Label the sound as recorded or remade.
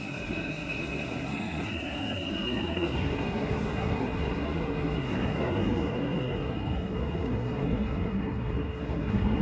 remade